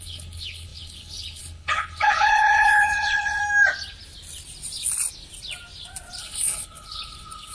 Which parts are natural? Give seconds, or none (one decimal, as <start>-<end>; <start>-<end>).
3.4-6.2